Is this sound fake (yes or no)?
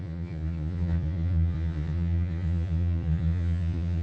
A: yes